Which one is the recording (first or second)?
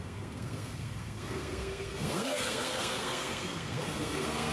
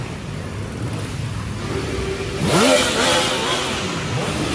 second